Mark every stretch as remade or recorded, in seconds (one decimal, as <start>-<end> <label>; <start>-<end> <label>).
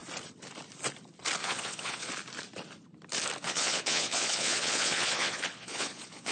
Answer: 0.0-1.4 recorded; 1.4-2.1 remade; 2.1-3.4 recorded; 3.4-6.3 remade